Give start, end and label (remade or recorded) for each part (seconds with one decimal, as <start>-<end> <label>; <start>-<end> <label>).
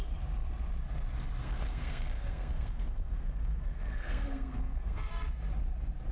0.0-1.4 recorded; 1.4-5.1 remade; 5.1-6.1 recorded